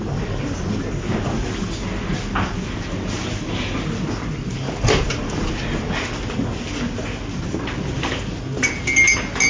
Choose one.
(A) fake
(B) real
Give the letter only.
B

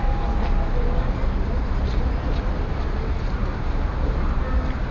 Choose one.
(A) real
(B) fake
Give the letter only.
A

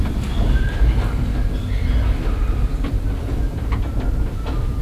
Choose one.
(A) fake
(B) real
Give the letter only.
B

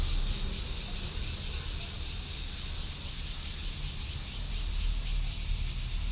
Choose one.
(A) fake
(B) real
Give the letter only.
B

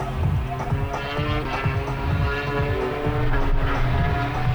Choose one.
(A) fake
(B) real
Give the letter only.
B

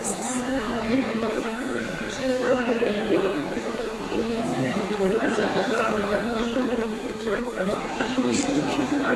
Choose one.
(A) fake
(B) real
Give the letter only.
A